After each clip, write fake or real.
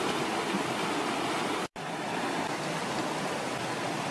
real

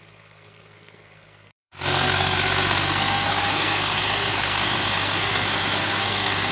fake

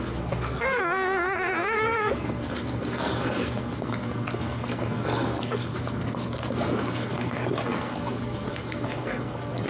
fake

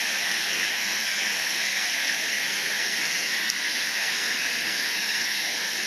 fake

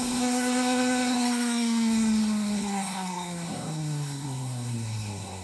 fake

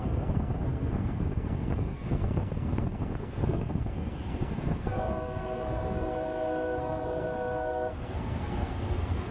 fake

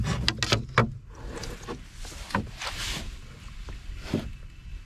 real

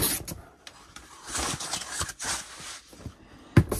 real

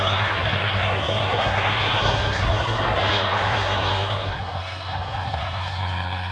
fake